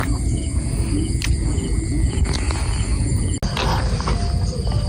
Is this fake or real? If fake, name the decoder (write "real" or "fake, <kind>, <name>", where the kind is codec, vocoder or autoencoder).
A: real